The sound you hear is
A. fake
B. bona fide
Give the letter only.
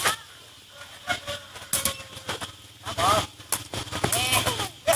B